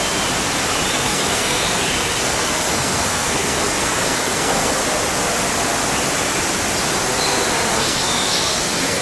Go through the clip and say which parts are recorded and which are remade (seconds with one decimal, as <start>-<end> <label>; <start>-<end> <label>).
0.0-0.9 recorded; 0.9-4.8 remade; 4.8-7.7 recorded; 7.7-9.0 remade